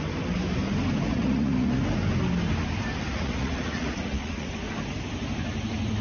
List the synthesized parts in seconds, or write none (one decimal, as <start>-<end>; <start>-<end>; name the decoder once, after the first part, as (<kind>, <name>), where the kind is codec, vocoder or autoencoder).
1.1-1.8 (vocoder, Vocos); 3.1-4.5